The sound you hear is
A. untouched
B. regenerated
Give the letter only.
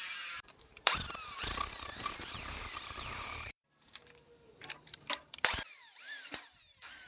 B